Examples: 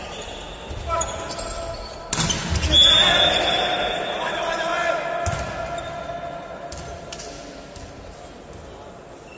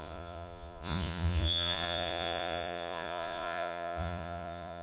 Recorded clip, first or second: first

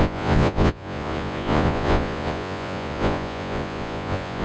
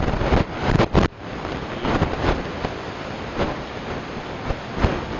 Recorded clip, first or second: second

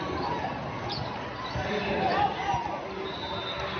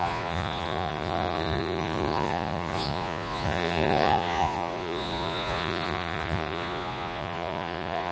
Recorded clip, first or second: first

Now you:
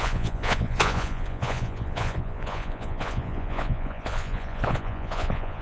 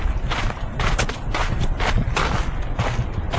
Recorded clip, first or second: second